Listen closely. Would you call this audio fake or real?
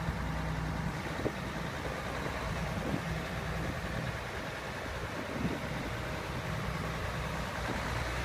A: fake